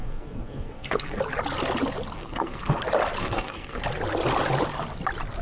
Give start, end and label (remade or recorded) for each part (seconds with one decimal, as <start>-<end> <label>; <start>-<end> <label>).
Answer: 0.0-1.2 remade; 1.2-2.2 recorded; 2.2-2.8 remade; 2.8-3.2 recorded; 3.2-3.8 remade; 3.8-5.4 recorded